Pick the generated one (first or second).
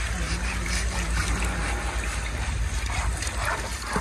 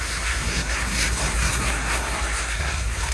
second